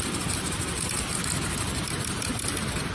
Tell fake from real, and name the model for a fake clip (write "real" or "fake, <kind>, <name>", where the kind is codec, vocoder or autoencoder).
fake, vocoder, BigVGAN v2